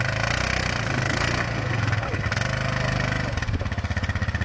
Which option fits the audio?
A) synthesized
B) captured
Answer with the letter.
B